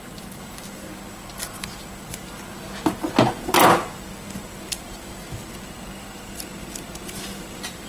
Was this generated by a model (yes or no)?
no